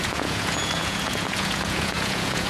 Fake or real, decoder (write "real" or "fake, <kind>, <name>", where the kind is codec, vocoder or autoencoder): fake, vocoder, Vocos